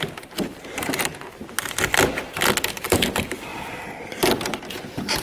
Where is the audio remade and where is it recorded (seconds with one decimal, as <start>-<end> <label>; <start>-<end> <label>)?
0.0-1.1 remade; 1.1-2.7 recorded; 2.7-3.5 remade; 3.5-4.7 recorded; 4.7-5.2 remade